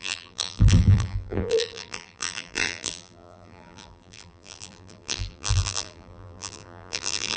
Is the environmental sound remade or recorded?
remade